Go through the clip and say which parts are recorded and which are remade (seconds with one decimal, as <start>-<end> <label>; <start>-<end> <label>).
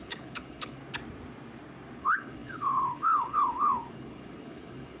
0.0-0.8 remade; 0.8-2.0 recorded; 2.0-5.0 remade